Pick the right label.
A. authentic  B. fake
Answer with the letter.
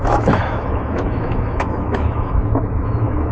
B